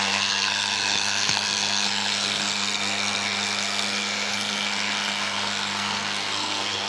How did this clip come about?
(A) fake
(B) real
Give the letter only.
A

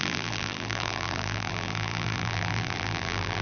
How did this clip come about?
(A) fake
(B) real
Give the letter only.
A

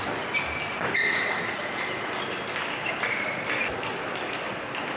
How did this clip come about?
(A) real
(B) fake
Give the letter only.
A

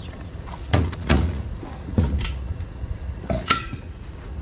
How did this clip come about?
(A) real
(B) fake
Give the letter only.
B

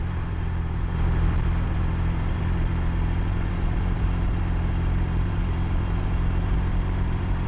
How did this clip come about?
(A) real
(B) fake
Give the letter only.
B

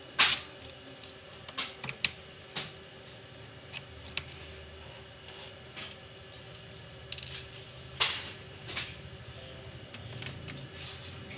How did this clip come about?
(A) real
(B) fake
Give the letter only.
A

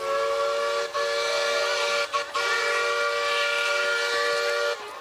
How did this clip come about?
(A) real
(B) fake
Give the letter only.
A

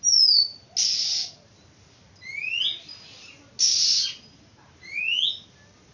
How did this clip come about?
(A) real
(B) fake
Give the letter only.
A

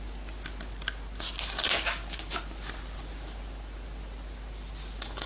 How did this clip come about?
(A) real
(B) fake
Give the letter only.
A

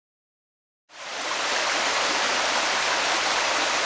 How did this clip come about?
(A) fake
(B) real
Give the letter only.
B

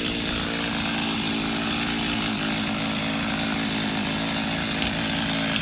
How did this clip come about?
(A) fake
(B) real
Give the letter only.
B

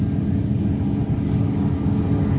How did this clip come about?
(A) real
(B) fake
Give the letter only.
A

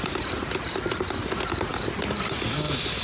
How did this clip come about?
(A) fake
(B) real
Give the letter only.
B